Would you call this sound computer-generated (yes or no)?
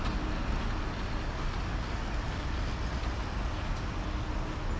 no